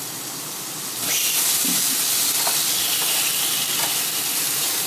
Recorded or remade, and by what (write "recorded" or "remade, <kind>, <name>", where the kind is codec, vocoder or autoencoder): recorded